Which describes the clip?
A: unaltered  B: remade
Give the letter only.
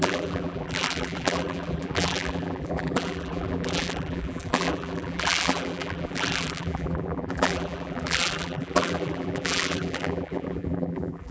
B